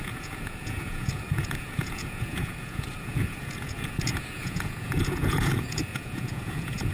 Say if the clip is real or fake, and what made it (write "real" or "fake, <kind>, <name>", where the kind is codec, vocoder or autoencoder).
fake, vocoder, Vocos